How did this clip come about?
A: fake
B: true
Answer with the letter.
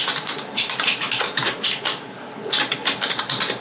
B